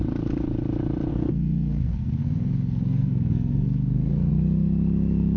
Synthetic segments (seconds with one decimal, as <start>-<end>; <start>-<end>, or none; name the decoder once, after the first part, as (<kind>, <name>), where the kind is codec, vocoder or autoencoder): 1.1-4.3 (codec, SNAC)

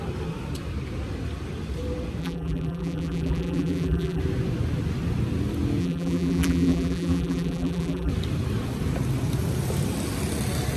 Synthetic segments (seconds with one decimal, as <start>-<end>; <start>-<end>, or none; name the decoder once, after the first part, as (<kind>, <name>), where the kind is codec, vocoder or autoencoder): 2.2-4.2 (vocoder, BigVGAN v2); 5.8-8.1

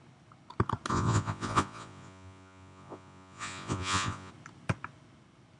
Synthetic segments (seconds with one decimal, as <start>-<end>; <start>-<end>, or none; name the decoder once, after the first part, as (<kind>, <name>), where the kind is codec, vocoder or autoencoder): 0.9-4.3 (vocoder, Vocos)

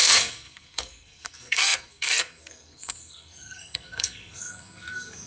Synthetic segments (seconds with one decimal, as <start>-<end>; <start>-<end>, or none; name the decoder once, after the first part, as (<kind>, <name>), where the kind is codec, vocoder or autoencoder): 0.0-5.3 (codec, SNAC)

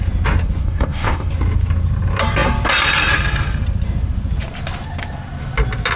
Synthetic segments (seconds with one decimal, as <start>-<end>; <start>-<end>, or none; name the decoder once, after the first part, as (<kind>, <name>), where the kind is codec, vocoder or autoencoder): 0.6-1.3 (codec, ZipCodec)

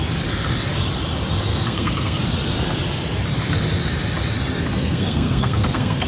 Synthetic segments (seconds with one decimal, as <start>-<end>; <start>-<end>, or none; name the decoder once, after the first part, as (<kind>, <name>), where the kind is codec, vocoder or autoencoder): 1.5-2.2 (codec, SNAC); 4.8-6.1

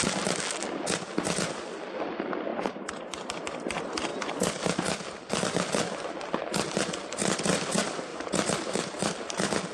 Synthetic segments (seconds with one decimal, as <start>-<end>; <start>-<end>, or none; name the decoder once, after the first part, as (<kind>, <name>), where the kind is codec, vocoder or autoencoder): 2.5-3.3 (vocoder, BigVGAN v2); 8.1-9.1